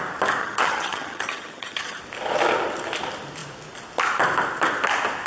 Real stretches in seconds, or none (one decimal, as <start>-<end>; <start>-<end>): 0.0-0.4; 2.0-5.3